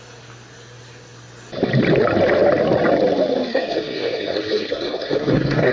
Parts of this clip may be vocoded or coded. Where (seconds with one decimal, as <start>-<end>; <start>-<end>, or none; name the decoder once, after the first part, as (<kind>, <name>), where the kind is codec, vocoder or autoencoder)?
3.5-5.7 (codec, SNAC)